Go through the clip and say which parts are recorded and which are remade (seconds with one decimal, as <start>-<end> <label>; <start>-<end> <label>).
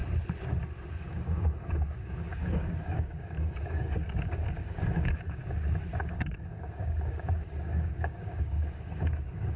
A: 0.0-0.9 recorded; 0.9-5.4 remade; 5.4-6.0 recorded; 6.0-9.6 remade